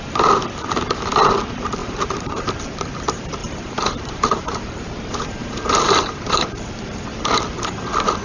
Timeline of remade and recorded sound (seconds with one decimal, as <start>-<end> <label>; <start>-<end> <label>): 0.0-1.8 recorded; 1.8-2.6 remade; 2.6-3.4 recorded; 3.4-7.0 remade; 7.0-8.2 recorded